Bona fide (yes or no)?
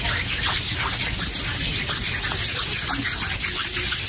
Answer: yes